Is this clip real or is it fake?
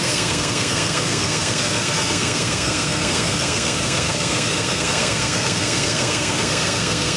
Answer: fake